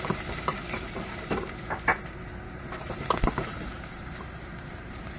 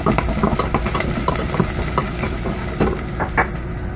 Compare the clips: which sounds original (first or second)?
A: second